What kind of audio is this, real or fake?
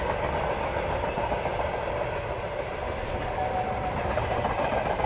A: real